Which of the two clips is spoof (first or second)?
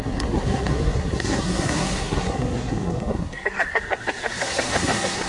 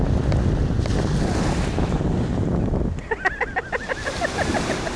first